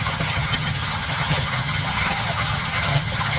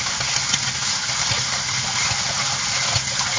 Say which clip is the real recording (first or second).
second